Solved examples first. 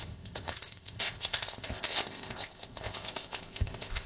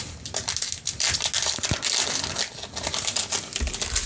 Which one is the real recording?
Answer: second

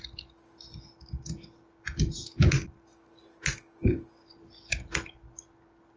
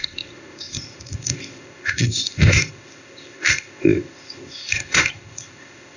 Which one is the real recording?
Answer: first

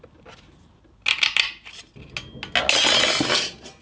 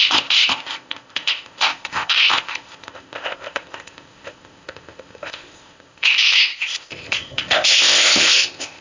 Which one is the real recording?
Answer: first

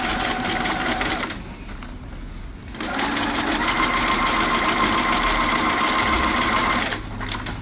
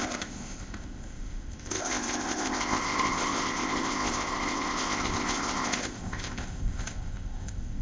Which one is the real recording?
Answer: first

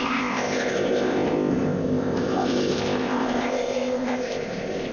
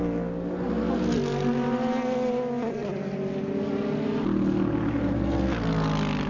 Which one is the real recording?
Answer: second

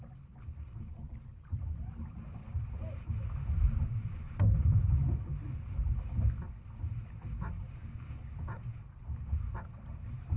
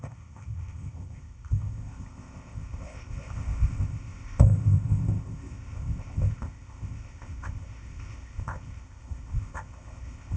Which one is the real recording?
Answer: first